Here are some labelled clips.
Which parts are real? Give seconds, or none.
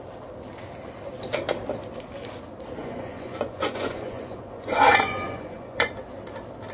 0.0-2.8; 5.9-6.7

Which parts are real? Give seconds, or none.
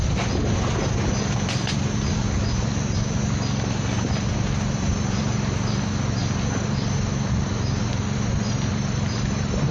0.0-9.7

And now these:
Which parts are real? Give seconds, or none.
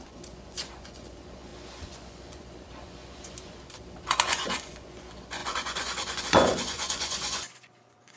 none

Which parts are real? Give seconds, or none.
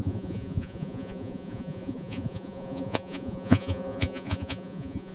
none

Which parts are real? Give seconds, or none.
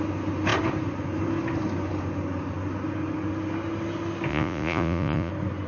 0.0-4.3; 5.3-5.7